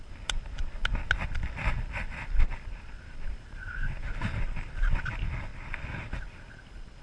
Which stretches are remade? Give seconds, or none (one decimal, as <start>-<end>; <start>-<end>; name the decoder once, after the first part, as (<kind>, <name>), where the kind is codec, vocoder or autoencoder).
none